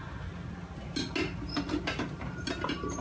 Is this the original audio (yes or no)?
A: yes